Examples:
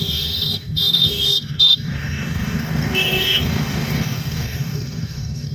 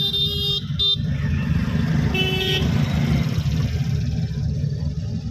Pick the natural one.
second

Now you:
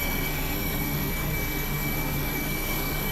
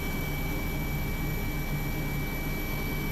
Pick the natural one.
second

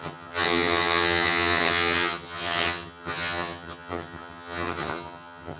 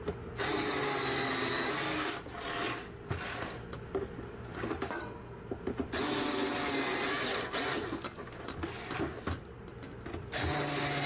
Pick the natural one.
second